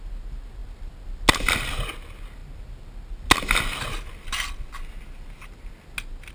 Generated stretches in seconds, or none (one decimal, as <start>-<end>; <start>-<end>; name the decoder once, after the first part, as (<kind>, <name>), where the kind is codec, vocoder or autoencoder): none

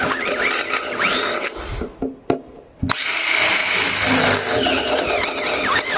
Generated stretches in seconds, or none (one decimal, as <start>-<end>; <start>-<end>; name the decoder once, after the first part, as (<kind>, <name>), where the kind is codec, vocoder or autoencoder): none

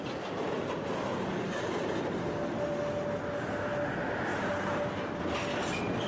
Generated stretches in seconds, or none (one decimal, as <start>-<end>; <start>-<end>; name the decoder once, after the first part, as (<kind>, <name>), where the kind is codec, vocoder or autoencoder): 1.1-2.2 (vocoder, BigVGAN v2)